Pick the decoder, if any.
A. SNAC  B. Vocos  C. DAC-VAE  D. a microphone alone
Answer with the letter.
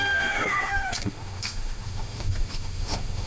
C